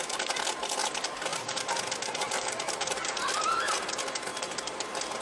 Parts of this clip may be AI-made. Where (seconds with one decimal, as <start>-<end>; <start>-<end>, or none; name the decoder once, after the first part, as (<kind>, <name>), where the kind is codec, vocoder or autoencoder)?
1.3-3.7 (vocoder, BigVGAN v2); 4.3-5.2

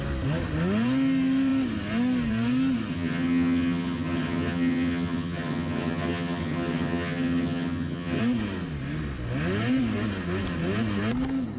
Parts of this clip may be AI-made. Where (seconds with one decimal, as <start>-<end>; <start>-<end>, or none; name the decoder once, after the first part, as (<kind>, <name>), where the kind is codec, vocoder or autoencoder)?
2.9-8.2 (vocoder, HiFi-GAN)

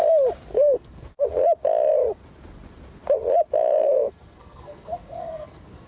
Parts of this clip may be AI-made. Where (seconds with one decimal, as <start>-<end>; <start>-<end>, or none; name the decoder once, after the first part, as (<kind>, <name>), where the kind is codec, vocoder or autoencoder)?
0.5-1.1 (codec, SNAC); 3.8-5.9

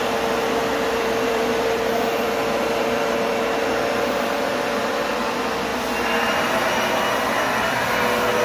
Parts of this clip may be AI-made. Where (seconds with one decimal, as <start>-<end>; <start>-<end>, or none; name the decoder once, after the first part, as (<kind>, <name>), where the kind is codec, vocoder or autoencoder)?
0.6-4.9 (vocoder, BigVGAN v2); 5.7-7.8

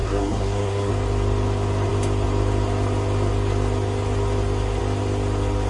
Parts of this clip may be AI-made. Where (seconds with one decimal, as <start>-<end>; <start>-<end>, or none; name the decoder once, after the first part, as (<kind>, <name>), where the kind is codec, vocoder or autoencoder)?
0.0-0.9 (codec, SNAC)